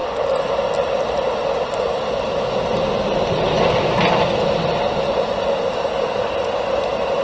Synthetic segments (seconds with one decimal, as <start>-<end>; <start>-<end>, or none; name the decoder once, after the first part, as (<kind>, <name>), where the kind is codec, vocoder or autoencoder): none